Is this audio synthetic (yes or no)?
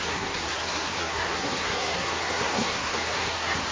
yes